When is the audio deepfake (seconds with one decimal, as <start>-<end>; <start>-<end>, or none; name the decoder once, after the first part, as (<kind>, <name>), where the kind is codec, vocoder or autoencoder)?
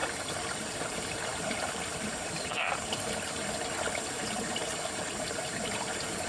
0.7-6.3 (vocoder, BigVGAN v2)